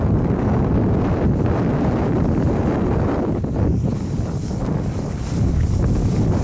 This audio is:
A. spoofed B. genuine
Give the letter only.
B